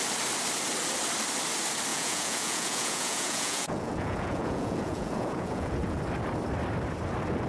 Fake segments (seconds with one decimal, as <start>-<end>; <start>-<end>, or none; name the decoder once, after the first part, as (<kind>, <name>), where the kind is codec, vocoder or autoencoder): 1.9-6.0 (vocoder, Vocos)